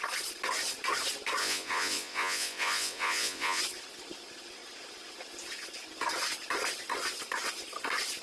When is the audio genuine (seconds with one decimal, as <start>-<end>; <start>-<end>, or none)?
0.0-1.4; 3.6-8.2